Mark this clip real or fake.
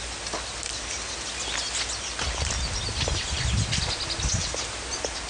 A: real